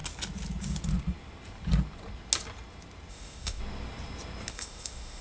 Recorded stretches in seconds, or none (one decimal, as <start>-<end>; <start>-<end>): 0.0-3.1; 3.6-4.5